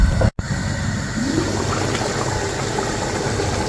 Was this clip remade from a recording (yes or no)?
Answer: no